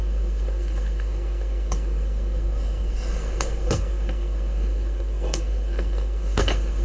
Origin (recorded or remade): remade